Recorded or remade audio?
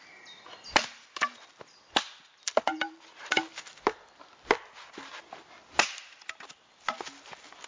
recorded